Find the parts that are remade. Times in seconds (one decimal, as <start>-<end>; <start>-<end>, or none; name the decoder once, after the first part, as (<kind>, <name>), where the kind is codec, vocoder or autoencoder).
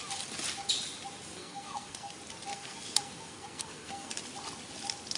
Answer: 1.3-2.1 (codec, SNAC); 2.5-4.1